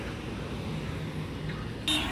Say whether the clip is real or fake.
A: real